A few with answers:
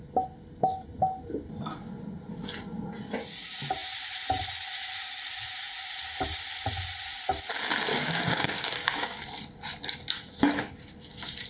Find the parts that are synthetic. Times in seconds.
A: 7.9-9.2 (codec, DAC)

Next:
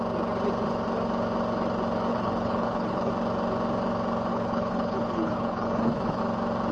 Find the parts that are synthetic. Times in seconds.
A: 2.1-3.1 (codec, HILCodec); 4.3-6.2

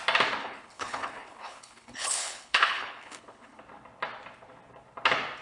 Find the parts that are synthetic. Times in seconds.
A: 0.4-3.6 (codec, HILCodec)

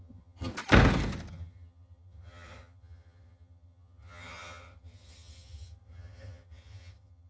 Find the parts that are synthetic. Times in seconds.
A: 0.0-0.5 (vocoder, HiFi-GAN); 1.3-7.3

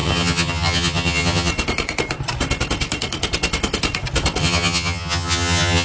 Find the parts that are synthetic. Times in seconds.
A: 0.0-1.5 (vocoder, HiFi-GAN); 4.4-5.8

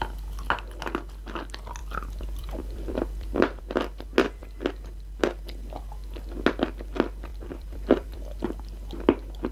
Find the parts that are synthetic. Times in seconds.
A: 1.8-3.6 (vocoder, BigVGAN v2); 7.3-8.6